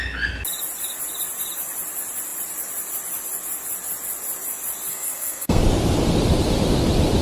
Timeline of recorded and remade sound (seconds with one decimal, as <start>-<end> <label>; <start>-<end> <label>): 0.0-4.9 recorded; 4.9-5.6 remade; 5.6-7.2 recorded